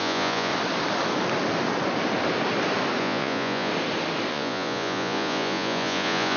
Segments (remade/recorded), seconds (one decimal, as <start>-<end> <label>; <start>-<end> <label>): 0.0-0.5 remade; 0.5-3.0 recorded; 3.0-3.7 remade; 3.7-4.3 recorded; 4.3-6.4 remade